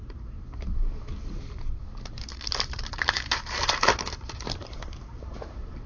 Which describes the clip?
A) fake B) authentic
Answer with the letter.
A